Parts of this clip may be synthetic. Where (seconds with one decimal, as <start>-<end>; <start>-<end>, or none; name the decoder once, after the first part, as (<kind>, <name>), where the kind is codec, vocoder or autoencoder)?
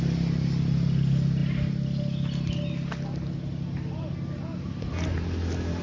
none